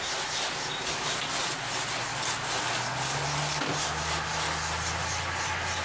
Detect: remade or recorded recorded